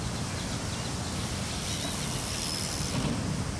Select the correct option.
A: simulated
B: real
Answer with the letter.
B